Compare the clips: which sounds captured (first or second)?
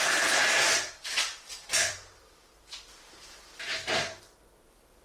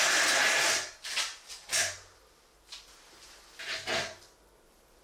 second